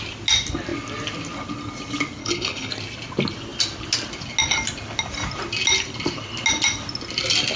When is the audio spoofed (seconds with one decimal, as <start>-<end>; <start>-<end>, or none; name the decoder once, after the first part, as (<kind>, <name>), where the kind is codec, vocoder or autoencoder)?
2.2-2.7 (codec, HILCodec)